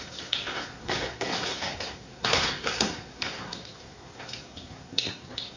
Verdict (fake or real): fake